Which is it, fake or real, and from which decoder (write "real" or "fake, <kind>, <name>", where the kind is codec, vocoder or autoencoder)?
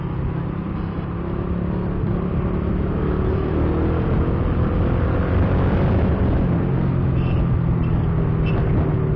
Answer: real